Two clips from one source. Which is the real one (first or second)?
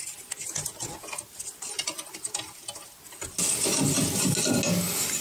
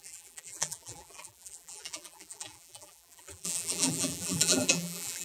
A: first